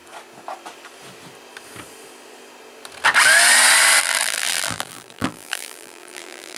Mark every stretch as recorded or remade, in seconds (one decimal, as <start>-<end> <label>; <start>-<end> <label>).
0.0-4.0 recorded; 4.0-6.6 remade